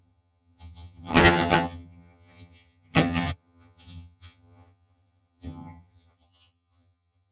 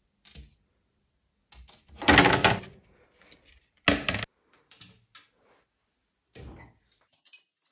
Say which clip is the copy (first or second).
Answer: first